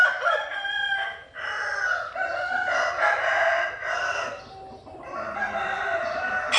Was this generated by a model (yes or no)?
no